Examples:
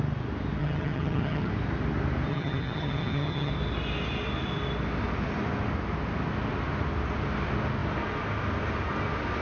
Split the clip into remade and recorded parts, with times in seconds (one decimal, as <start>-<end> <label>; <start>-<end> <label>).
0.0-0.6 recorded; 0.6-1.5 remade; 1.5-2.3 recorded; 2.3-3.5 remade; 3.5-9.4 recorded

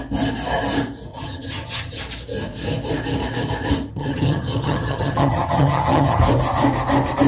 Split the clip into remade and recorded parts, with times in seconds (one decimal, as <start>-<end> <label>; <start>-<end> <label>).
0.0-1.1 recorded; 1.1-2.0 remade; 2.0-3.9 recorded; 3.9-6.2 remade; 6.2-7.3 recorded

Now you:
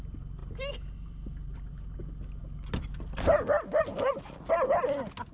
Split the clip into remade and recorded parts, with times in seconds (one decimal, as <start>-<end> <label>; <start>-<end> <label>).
0.0-5.3 recorded

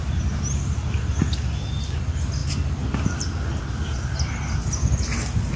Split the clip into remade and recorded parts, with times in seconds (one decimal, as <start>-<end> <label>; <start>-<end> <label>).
0.0-5.6 recorded

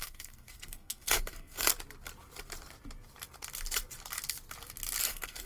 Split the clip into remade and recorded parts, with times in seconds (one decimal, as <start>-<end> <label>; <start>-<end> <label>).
0.0-1.7 remade; 1.7-5.0 recorded; 5.0-5.5 remade